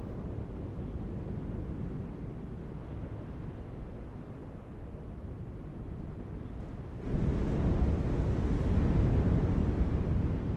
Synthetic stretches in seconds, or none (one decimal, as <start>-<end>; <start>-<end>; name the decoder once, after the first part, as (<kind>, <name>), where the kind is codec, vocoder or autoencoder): 4.4-7.9 (vocoder, BigVGAN v2); 9.6-10.2